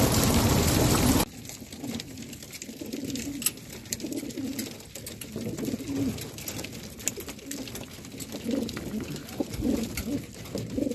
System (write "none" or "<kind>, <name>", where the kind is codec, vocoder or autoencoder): none